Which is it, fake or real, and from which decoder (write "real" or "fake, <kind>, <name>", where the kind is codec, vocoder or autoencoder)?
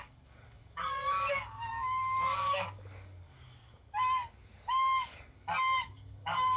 fake, codec, DAC